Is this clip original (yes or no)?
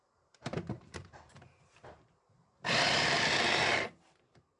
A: no